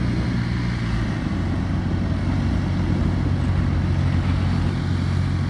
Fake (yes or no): no